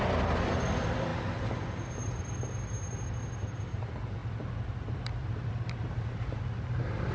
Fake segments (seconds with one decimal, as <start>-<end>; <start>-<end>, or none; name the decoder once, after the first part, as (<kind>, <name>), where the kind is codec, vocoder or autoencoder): 4.2-7.1 (vocoder, BigVGAN v2)